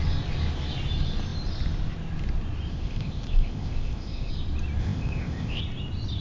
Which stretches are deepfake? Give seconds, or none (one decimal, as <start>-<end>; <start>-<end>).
2.7-4.3; 4.8-5.6